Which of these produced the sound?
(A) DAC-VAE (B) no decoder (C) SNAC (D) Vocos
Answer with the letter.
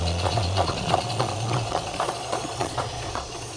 D